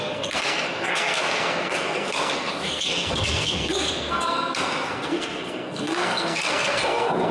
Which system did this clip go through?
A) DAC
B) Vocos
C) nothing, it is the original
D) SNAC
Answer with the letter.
D